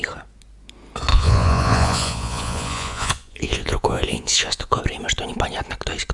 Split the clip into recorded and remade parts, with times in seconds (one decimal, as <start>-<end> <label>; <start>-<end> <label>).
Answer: 0.0-1.1 recorded; 1.1-4.8 remade; 4.8-6.1 recorded